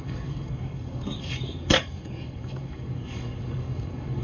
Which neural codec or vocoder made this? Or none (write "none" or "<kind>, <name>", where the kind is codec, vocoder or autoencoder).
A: codec, DAC